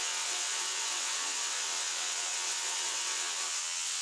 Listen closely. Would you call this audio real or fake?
fake